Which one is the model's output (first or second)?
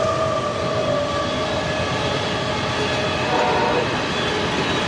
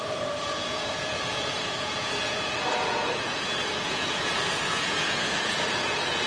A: second